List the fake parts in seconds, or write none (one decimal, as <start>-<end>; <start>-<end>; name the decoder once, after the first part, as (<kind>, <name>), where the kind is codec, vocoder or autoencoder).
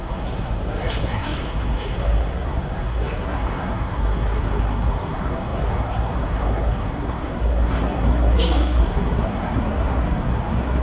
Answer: 0.0-10.8 (codec, SNAC)